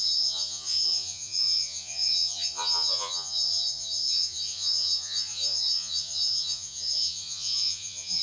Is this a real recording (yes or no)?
no